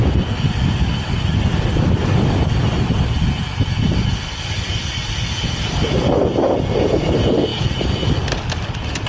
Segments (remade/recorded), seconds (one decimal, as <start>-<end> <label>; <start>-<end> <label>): 0.0-9.1 recorded